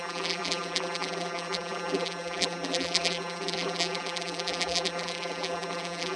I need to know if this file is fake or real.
fake